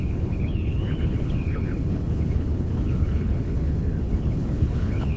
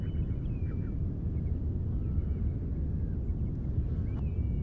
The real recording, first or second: second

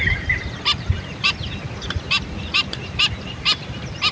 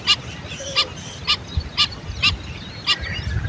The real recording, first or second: second